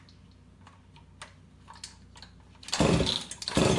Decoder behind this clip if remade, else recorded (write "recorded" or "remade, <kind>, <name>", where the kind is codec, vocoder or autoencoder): recorded